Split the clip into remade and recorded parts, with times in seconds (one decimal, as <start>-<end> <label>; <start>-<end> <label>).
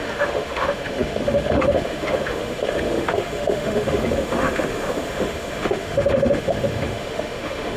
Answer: 0.0-7.8 remade